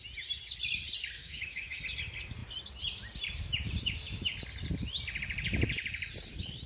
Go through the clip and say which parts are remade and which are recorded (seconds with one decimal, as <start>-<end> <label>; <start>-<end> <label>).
0.0-1.2 recorded; 1.2-1.8 remade; 1.8-6.7 recorded